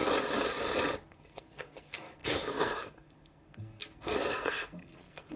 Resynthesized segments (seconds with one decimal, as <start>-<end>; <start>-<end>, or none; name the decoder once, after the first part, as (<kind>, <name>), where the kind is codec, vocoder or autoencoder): 1.1-5.4 (codec, SNAC)